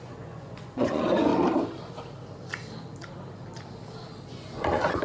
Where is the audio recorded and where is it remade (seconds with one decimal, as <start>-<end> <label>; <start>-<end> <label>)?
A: 0.0-1.3 remade; 1.3-4.3 recorded; 4.3-5.0 remade